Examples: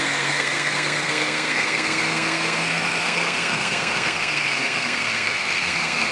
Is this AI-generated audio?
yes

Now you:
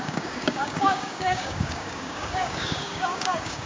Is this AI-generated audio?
yes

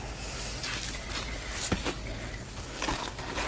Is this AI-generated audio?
no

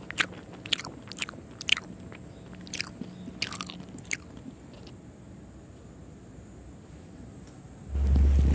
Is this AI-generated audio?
no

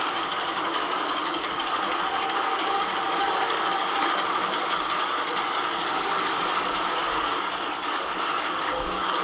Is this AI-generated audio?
yes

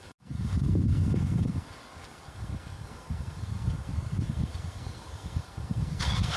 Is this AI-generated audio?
yes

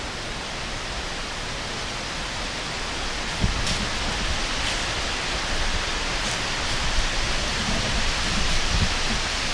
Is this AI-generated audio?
no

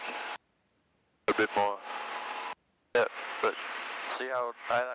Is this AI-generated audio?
no